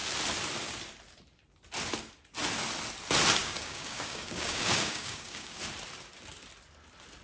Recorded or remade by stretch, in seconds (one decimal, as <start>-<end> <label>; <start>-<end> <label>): 0.0-3.4 recorded; 3.4-5.6 remade; 5.6-7.2 recorded